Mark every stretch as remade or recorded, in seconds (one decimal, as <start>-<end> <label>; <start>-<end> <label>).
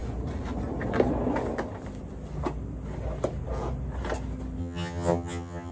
0.0-4.6 recorded; 4.6-5.7 remade